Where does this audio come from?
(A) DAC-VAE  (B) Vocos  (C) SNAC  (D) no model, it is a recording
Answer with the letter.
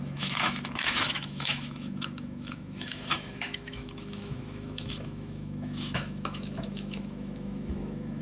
A